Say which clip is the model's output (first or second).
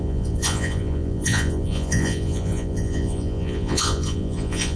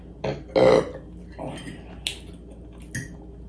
first